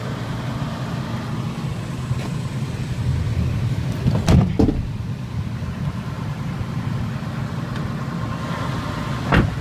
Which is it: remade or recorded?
recorded